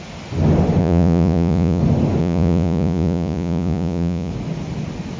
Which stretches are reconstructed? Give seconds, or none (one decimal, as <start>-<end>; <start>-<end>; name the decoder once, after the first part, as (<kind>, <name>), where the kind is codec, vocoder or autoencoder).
0.8-1.8 (vocoder, Vocos); 2.2-4.3